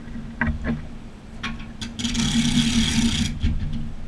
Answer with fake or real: real